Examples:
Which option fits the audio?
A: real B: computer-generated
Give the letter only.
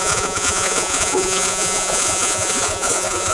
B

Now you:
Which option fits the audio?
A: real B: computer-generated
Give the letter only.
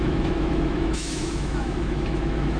B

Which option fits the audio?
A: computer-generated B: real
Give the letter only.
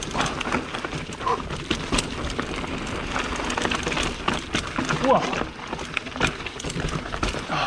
B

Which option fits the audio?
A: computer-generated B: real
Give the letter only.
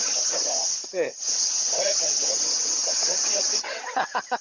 A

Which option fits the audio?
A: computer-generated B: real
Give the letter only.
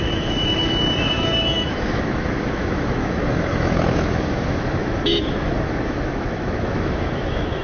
A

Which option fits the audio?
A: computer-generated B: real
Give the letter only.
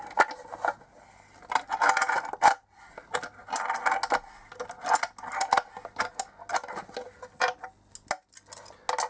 B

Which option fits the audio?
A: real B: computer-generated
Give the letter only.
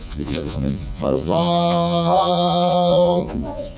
B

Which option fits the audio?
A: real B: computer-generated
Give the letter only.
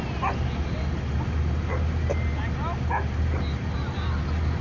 A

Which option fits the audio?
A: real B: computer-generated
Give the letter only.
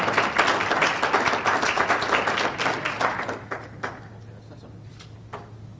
A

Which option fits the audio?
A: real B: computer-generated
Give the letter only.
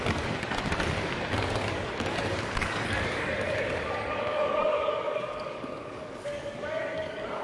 B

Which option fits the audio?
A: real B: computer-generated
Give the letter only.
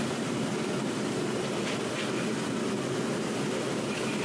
A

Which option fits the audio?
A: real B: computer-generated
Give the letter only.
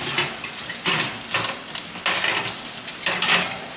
A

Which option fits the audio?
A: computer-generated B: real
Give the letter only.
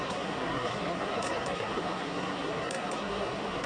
A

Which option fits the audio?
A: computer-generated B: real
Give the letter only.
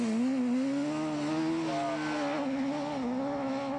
B